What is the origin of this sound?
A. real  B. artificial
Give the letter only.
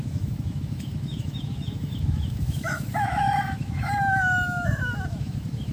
B